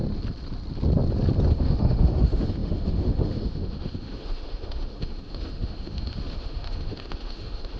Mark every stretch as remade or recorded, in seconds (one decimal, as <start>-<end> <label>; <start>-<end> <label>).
0.0-1.5 recorded; 1.5-7.8 remade